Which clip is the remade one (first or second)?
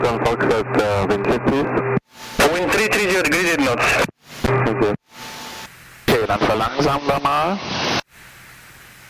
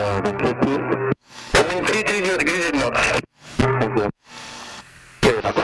second